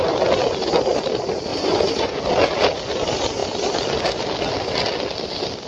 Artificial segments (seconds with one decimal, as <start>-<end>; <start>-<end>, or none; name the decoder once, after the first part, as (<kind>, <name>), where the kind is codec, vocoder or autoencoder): 1.5-2.2 (vocoder, Vocos)